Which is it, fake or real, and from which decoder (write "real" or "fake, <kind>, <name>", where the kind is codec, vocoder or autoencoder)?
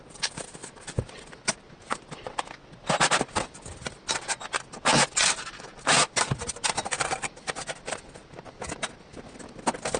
real